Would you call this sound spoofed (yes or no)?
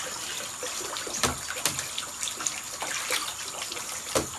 no